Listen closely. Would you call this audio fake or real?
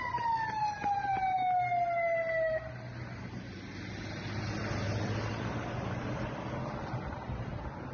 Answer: real